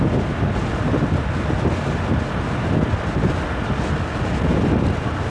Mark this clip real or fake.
real